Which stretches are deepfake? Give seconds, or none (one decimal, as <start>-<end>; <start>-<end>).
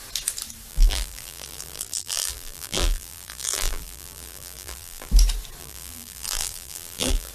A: 0.7-5.1; 5.6-7.3